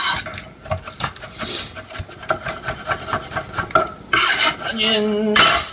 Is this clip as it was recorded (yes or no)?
yes